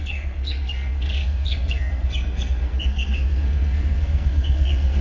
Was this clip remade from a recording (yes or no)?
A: yes